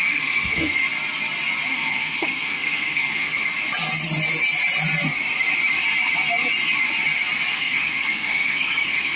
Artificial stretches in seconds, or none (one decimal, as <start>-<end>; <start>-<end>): 0.0-0.8; 1.7-3.5; 7.5-9.2